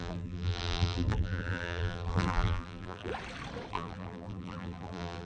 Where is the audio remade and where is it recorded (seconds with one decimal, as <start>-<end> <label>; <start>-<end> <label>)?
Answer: 0.0-3.1 remade; 3.1-3.7 recorded; 3.7-5.3 remade